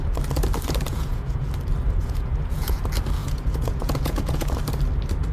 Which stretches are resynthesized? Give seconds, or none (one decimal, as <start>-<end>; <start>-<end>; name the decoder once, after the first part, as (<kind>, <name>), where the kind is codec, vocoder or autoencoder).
0.9-1.5 (vocoder, Vocos); 2.0-2.8; 3.2-4.5